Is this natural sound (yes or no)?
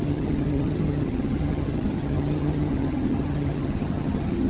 no